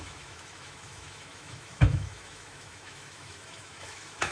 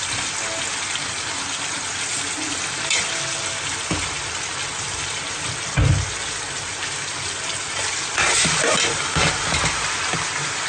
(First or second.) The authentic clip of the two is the second